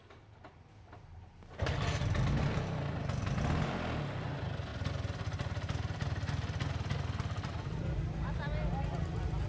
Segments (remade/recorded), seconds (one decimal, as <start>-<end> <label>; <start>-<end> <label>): 0.0-9.5 recorded